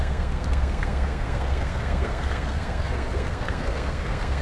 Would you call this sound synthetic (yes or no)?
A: yes